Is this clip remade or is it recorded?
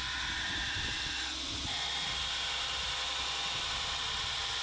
recorded